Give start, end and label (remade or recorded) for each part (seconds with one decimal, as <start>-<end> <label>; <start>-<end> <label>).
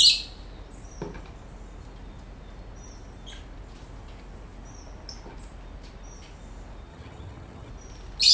0.0-6.9 recorded; 6.9-7.7 remade; 7.7-8.3 recorded